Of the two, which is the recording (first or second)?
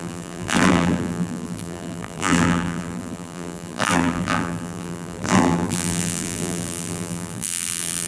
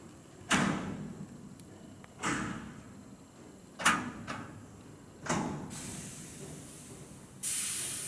second